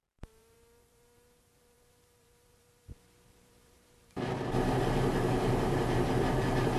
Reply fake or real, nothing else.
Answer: fake